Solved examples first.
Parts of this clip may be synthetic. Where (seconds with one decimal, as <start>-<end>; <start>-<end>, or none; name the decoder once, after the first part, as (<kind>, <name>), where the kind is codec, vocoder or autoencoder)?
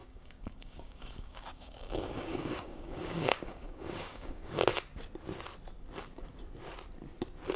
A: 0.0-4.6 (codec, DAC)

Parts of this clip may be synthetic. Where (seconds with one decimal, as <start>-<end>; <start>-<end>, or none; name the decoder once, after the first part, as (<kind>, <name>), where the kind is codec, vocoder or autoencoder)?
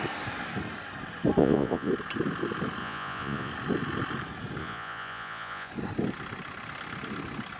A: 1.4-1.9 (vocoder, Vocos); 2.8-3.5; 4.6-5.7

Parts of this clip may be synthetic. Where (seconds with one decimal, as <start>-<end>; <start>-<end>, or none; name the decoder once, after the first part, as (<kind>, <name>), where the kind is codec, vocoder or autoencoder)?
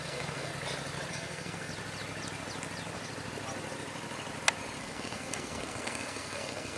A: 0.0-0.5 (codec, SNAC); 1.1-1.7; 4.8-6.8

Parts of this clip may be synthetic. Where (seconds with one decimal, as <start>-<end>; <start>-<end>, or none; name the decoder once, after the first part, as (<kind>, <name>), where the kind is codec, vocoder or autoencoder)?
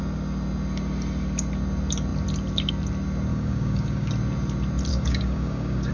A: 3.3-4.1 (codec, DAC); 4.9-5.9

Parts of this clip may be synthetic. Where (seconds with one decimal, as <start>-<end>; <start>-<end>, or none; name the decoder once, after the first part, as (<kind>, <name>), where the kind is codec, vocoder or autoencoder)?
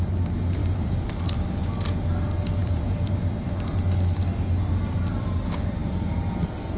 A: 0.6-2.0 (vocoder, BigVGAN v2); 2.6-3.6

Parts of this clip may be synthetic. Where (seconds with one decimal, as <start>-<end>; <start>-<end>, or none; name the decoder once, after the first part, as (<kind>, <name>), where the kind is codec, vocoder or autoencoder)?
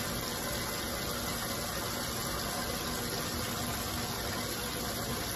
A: none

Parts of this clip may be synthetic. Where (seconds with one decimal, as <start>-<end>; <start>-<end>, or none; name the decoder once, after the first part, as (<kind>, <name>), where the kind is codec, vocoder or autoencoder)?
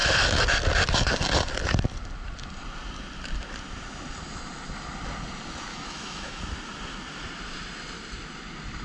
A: 5.7-6.4 (autoencoder, DAC-VAE)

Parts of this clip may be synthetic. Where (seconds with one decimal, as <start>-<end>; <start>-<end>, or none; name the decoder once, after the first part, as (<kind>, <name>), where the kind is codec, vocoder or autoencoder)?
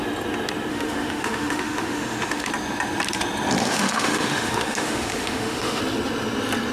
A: 0.7-2.5 (autoencoder, DAC-VAE); 3.6-5.8